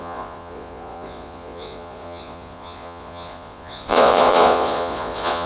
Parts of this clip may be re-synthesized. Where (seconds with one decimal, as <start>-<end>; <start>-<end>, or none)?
0.0-5.5